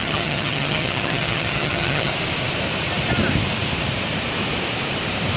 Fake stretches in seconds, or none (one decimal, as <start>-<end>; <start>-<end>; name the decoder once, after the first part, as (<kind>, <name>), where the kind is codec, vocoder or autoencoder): 0.0-2.1 (vocoder, HiFi-GAN)